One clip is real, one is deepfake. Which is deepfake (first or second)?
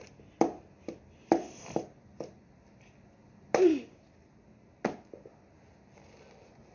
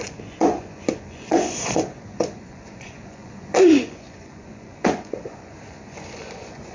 second